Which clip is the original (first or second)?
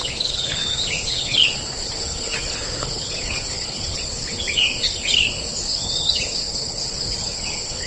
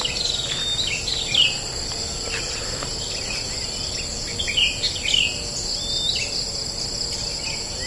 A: second